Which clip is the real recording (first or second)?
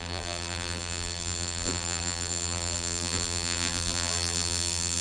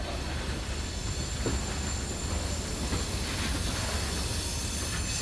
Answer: second